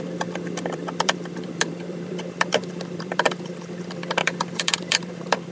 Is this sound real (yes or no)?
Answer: no